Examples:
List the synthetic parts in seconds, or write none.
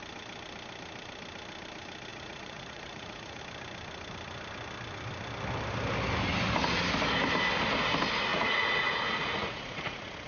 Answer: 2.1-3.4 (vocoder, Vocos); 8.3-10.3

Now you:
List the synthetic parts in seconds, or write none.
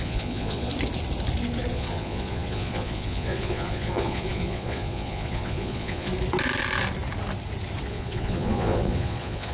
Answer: 0.0-0.7 (vocoder, Vocos); 1.7-6.1; 7.9-9.5